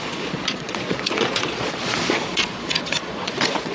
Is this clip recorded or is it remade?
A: remade